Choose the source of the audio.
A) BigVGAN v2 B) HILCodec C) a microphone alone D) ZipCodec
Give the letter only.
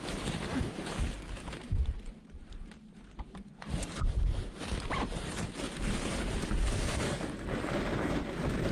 A